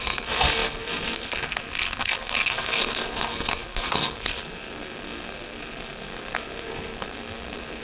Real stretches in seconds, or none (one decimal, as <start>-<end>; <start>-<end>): none